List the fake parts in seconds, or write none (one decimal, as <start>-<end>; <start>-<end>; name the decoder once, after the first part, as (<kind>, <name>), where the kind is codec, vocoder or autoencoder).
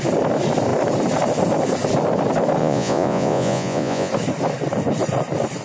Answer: 2.6-4.1 (vocoder, Vocos)